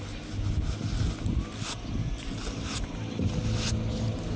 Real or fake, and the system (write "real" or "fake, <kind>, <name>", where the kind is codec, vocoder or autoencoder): real